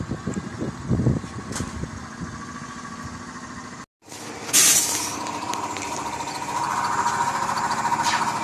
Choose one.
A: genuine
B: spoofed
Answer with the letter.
A